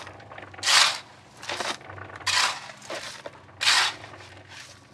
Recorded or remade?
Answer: recorded